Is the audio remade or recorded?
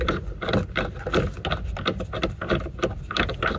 recorded